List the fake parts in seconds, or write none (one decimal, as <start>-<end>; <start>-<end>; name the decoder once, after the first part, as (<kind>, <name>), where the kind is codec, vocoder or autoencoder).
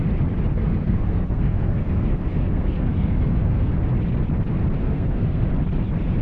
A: 0.5-3.7 (codec, SNAC); 4.8-5.5